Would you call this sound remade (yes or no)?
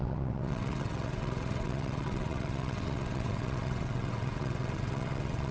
yes